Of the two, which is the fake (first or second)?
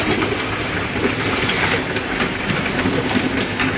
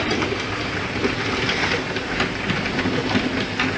first